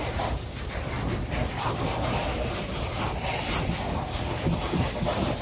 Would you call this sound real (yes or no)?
yes